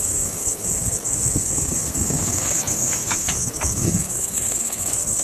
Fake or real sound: fake